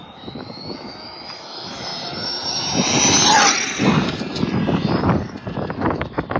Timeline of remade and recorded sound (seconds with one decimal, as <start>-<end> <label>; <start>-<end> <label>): 0.0-1.9 remade; 1.9-5.7 recorded; 5.7-6.4 remade